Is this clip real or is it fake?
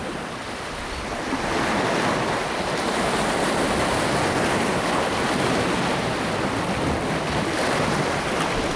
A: real